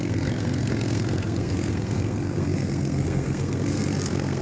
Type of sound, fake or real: fake